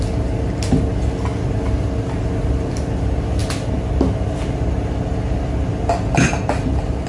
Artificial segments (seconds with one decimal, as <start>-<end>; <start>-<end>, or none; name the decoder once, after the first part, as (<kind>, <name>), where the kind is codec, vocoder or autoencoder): none